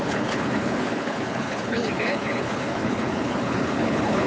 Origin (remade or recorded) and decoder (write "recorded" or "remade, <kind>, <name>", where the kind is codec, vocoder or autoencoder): remade, codec, HILCodec